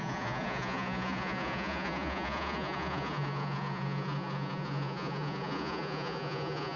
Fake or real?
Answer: fake